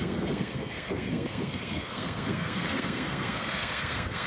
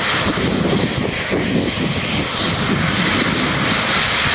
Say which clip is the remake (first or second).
first